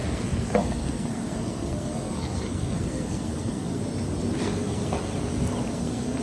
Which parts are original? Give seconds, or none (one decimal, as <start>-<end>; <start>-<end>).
3.8-4.4; 5.1-5.7